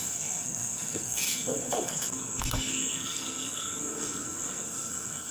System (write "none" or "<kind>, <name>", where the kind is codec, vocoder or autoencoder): codec, SNAC